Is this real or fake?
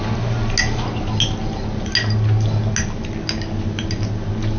real